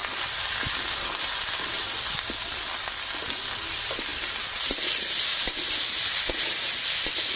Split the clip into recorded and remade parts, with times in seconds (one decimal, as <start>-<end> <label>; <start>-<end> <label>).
0.0-7.4 recorded